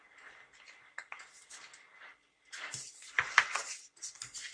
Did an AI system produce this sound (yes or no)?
no